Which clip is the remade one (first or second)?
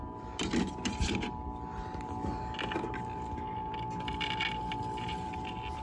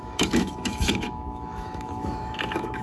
second